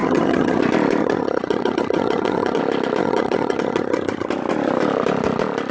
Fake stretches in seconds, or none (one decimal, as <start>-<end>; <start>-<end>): 0.0-0.6; 1.0-2.6; 3.0-4.3